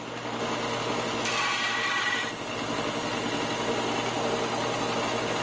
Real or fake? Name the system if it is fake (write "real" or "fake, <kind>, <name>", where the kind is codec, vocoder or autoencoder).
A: real